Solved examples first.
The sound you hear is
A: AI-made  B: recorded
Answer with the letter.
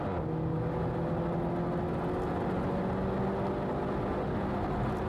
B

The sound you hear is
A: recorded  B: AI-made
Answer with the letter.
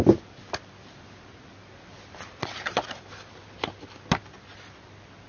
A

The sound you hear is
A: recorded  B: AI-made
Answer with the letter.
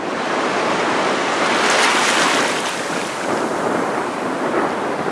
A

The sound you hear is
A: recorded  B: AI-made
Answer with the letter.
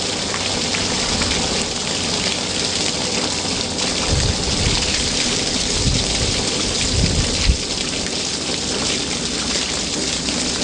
A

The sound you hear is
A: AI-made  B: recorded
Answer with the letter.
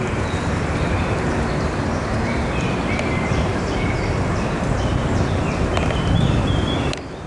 A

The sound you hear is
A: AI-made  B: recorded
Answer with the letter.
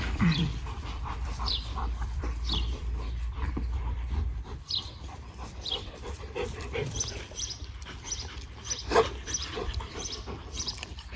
A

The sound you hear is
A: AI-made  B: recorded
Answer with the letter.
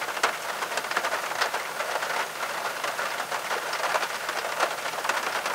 B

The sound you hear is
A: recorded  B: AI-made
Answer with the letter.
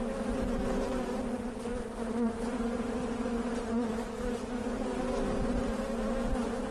B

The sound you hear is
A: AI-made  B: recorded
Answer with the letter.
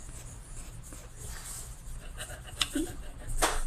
B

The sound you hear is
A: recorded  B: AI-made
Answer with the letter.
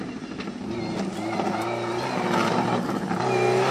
A